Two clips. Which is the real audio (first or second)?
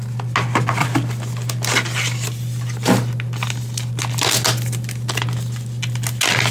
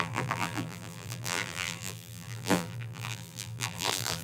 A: first